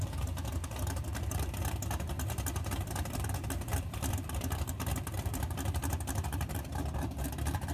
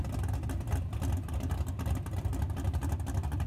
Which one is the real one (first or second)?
second